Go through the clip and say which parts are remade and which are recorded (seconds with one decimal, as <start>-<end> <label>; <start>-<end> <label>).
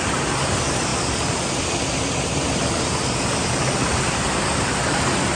0.0-5.3 recorded